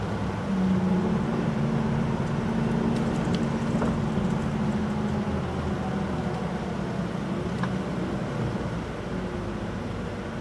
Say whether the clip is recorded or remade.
recorded